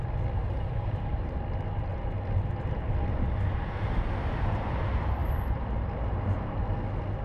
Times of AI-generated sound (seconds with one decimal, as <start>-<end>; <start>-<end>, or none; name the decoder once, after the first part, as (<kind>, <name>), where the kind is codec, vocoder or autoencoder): 0.4-1.4 (vocoder, BigVGAN v2); 5.2-6.5